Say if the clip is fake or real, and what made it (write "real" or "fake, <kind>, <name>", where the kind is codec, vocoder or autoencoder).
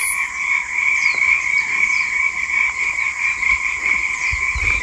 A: fake, vocoder, BigVGAN v2